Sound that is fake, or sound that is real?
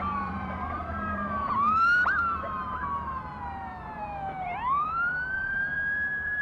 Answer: fake